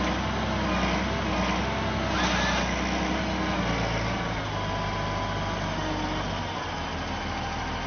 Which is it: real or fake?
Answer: real